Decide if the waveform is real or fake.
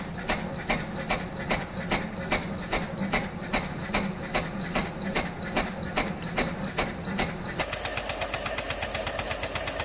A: real